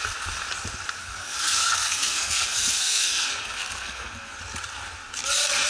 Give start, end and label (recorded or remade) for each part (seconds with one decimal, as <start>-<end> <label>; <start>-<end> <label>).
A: 0.0-1.0 recorded; 1.0-4.4 remade; 4.4-5.7 recorded